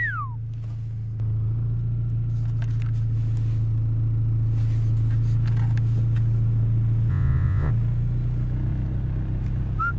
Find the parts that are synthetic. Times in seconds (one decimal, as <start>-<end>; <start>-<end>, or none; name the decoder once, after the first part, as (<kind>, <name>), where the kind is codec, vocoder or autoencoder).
7.1-7.7 (vocoder, Vocos)

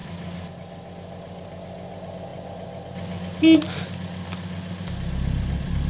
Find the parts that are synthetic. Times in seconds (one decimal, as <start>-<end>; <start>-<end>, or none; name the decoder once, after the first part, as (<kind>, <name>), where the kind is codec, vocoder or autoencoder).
none

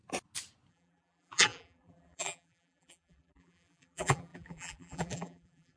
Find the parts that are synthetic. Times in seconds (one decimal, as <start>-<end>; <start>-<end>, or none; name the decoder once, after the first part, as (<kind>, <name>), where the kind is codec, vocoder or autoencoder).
0.7-5.8 (vocoder, BigVGAN v2)

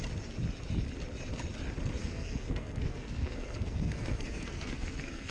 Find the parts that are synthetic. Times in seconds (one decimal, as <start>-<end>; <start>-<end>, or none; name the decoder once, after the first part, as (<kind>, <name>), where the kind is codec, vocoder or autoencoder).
2.0-5.3 (codec, SNAC)

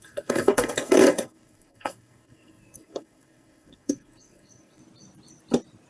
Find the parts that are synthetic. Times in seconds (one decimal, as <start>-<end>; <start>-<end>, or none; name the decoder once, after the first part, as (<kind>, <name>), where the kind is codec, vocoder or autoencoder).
0.0-4.8 (codec, SNAC)